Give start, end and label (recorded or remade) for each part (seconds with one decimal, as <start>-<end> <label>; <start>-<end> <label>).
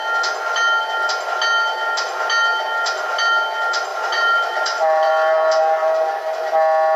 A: 0.0-3.9 recorded; 3.9-5.1 remade; 5.1-7.0 recorded